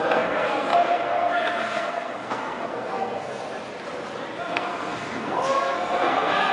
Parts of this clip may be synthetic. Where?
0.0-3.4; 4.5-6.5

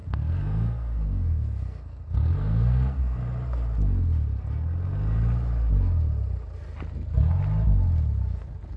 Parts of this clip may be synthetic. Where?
0.0-3.2

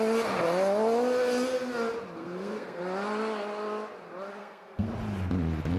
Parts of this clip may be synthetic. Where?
2.2-2.8; 4.4-4.9

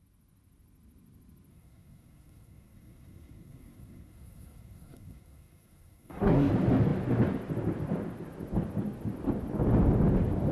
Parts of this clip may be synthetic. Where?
1.5-6.5

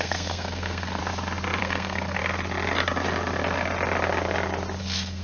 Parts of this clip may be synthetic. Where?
0.0-1.0; 1.6-2.2; 4.8-5.2

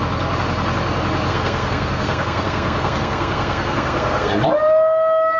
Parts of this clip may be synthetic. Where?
1.3-4.3

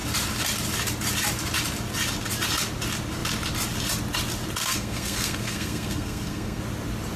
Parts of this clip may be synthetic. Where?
4.6-6.6

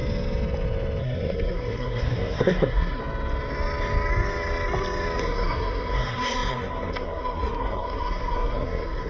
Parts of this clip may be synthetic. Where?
1.0-3.0; 5.2-9.1